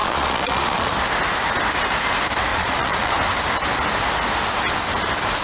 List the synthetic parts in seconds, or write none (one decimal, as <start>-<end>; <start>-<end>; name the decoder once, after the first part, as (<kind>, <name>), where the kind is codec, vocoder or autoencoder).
0.0-0.9 (vocoder, Vocos); 2.5-3.1